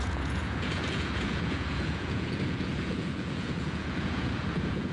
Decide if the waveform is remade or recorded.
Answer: remade